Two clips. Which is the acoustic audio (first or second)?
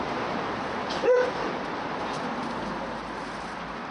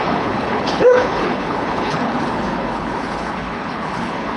first